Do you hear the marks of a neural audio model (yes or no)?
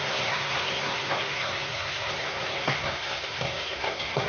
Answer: yes